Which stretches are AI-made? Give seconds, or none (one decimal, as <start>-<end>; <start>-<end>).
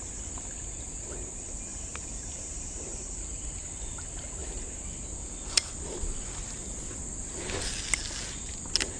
1.7-3.4